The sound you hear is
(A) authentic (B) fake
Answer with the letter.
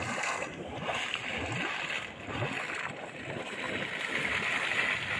A